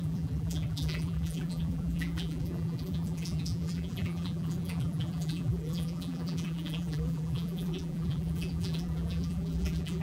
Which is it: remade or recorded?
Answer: remade